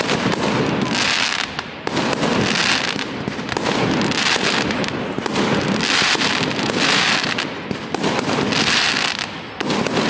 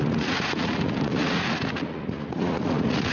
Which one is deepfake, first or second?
second